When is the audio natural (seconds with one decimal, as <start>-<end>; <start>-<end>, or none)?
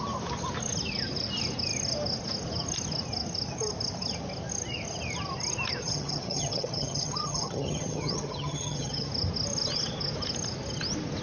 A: 0.0-5.8; 9.1-11.2